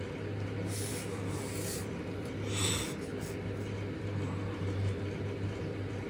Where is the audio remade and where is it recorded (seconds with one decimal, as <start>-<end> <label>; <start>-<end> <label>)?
0.0-6.1 recorded